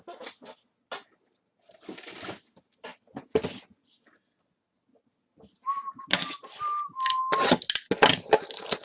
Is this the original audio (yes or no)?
yes